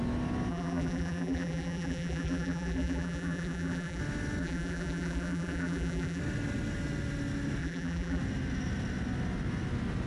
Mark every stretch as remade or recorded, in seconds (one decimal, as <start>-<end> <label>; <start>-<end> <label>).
0.0-0.5 recorded; 0.5-4.0 remade; 4.0-4.4 recorded; 4.4-6.2 remade; 6.2-7.6 recorded; 7.6-8.2 remade; 8.2-10.1 recorded